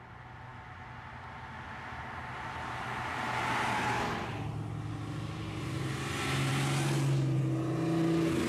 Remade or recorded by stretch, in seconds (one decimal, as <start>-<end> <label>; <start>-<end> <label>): 0.0-8.5 recorded